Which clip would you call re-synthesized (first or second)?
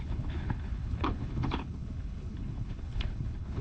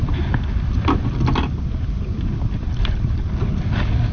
first